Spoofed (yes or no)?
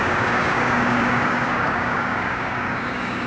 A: yes